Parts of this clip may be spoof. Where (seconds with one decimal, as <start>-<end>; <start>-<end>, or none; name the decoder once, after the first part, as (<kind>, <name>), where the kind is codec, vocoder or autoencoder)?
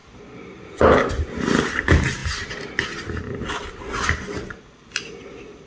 none